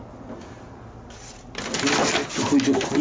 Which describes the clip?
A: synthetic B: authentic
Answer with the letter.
B